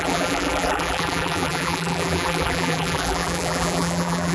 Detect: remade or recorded remade